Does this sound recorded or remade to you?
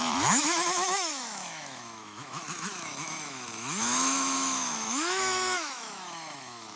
remade